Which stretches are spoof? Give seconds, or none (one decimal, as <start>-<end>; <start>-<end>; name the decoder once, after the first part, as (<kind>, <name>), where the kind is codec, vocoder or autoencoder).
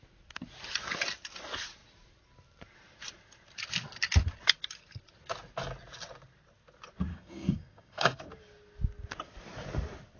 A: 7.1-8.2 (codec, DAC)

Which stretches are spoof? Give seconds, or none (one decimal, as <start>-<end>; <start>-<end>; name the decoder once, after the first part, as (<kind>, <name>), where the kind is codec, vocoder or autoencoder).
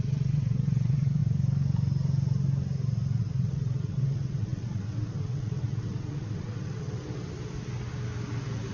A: 0.0-1.2 (vocoder, WaveNeXt); 3.2-7.0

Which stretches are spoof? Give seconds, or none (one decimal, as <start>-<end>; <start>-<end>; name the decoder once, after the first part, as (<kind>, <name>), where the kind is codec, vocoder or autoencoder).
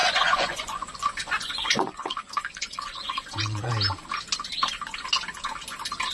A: 0.0-3.7 (vocoder, Vocos)